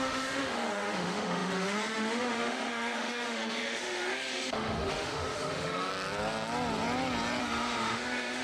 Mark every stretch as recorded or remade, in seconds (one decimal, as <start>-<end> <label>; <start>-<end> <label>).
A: 0.0-5.9 remade; 5.9-7.4 recorded; 7.4-8.4 remade